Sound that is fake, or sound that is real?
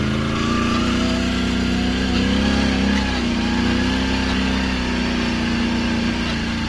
real